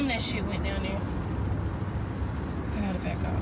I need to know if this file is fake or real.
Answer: real